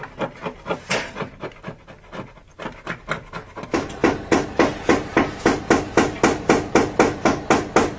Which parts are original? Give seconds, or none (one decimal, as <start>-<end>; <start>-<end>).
0.0-8.0